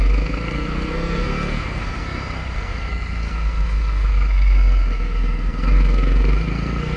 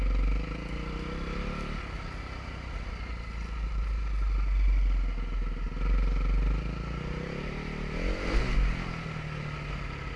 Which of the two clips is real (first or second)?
second